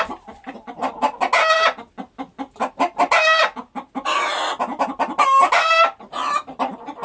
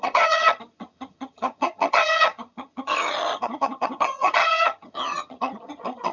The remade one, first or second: second